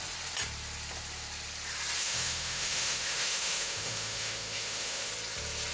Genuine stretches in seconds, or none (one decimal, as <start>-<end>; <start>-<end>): 0.0-2.0; 5.1-5.7